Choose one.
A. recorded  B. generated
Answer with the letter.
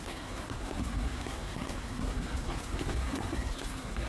B